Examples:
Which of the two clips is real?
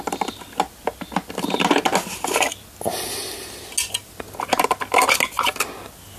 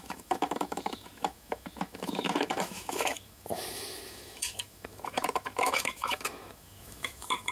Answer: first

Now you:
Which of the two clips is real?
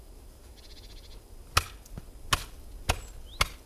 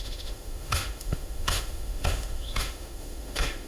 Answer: first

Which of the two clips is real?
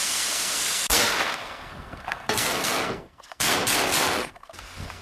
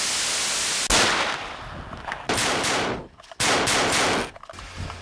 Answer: second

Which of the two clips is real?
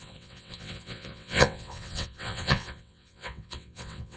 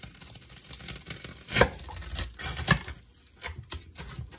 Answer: second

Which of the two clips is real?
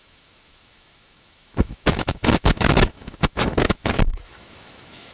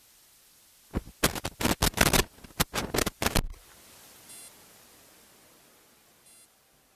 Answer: second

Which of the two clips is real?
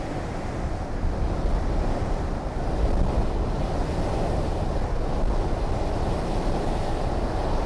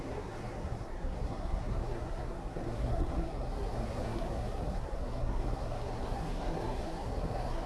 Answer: first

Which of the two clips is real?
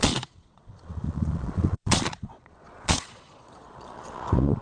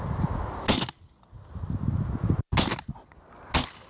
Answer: second